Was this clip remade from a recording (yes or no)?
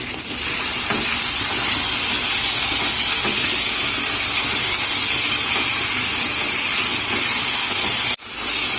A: no